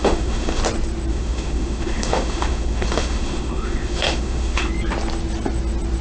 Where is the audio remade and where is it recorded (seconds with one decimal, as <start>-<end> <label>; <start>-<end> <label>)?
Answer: 0.0-0.6 remade; 0.6-1.1 recorded; 1.1-4.7 remade; 4.7-6.0 recorded